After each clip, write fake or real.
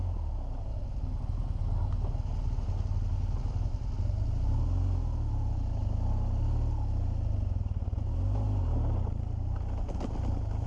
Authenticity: real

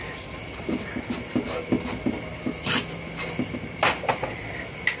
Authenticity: real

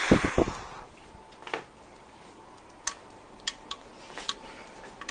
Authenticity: real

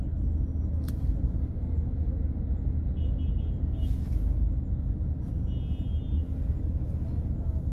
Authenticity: real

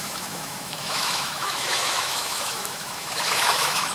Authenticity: fake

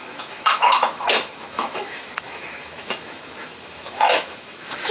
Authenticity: fake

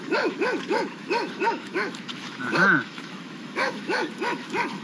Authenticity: fake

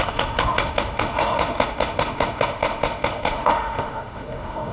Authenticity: fake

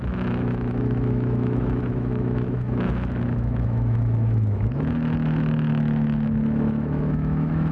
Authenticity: fake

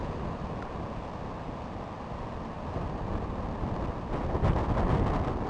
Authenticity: real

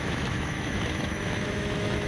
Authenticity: fake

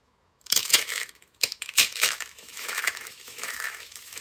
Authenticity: fake